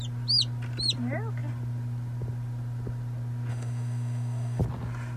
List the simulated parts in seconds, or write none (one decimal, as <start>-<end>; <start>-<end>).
3.5-4.6